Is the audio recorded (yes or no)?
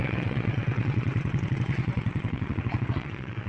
no